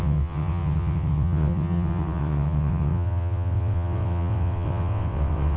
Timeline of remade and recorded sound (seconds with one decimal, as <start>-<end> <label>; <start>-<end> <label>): 0.0-5.6 remade